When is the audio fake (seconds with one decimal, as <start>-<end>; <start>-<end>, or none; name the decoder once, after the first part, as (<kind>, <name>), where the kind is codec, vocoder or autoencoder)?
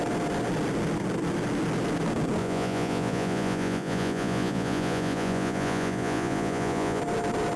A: 2.4-7.0 (vocoder, Vocos)